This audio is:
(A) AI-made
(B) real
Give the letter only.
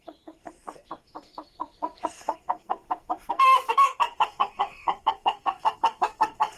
A